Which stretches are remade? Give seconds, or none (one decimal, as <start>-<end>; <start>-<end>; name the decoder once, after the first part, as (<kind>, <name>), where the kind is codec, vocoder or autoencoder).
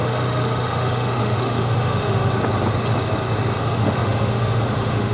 0.0-2.3 (autoencoder, DAC-VAE); 3.6-5.1